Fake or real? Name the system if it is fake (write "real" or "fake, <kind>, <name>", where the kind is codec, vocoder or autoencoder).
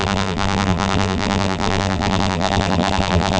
fake, vocoder, BigVGAN v2